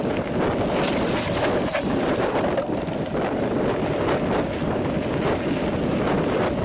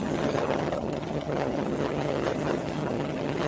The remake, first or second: second